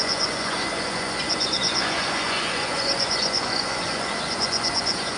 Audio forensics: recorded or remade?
remade